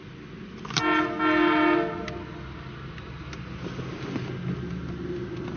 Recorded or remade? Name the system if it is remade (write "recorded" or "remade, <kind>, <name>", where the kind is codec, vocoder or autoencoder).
recorded